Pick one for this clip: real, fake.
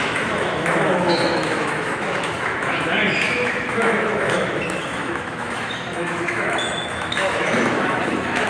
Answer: fake